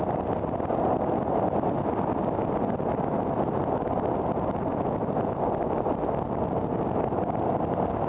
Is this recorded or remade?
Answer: recorded